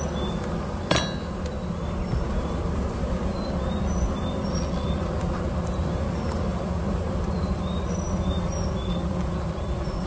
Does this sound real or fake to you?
real